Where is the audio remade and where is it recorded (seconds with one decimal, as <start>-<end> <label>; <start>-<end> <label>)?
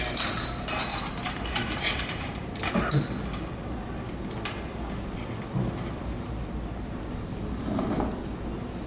0.0-0.9 recorded; 0.9-2.7 remade; 2.7-8.9 recorded